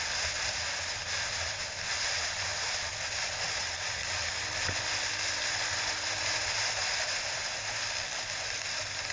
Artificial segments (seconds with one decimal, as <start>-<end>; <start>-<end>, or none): none